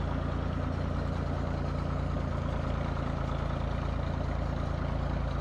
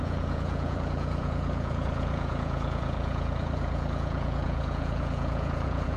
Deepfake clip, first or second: second